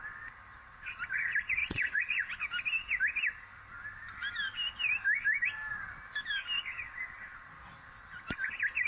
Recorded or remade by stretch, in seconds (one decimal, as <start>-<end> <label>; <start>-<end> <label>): 0.0-1.6 recorded; 1.6-2.3 remade; 2.3-8.9 recorded